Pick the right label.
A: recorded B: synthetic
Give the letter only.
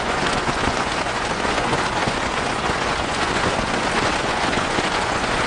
B